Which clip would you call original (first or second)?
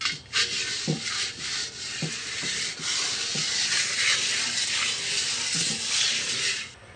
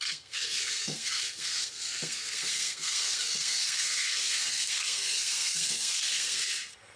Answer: first